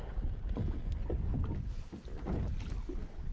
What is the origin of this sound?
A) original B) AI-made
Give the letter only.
A